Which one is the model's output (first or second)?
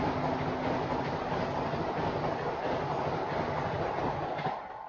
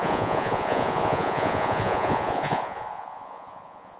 second